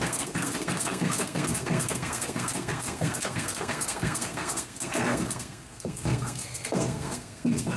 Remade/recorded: remade